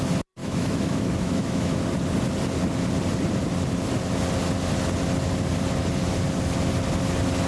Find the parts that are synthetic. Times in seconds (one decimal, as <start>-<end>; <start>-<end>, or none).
0.4-1.8